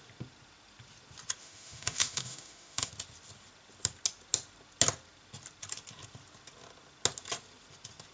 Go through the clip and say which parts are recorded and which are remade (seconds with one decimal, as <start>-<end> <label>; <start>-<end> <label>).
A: 0.0-1.4 recorded; 1.4-2.9 remade; 2.9-8.1 recorded